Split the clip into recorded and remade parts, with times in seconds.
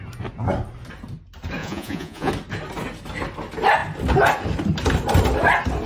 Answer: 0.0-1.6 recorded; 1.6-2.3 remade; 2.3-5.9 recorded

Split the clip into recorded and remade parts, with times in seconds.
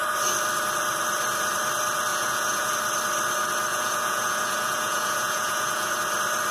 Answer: 0.0-2.1 recorded; 2.1-2.7 remade; 2.7-3.7 recorded; 3.7-5.9 remade; 5.9-6.5 recorded